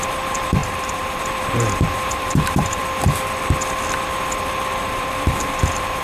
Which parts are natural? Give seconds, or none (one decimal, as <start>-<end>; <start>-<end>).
2.8-4.8